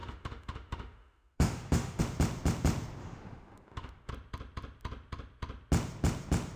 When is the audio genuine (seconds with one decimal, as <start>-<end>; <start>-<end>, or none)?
2.0-3.0; 4.1-6.6